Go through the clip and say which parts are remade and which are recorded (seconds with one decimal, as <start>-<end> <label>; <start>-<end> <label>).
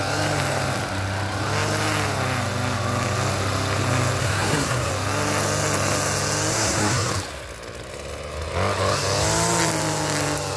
0.0-4.2 recorded; 4.2-4.9 remade; 4.9-6.5 recorded; 6.5-7.1 remade; 7.1-10.6 recorded